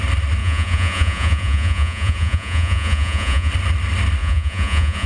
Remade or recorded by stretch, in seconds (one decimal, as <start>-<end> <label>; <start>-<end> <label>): 0.0-0.4 recorded; 0.4-3.5 remade; 3.5-4.2 recorded; 4.2-5.1 remade